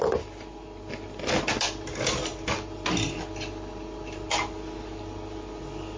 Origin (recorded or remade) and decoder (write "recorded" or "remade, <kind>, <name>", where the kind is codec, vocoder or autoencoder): recorded